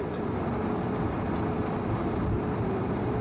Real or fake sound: fake